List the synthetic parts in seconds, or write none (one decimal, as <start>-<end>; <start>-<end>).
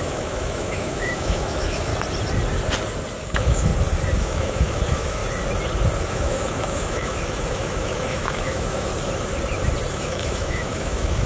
0.0-1.9; 3.2-3.7; 4.2-5.2; 6.1-8.9; 9.9-11.3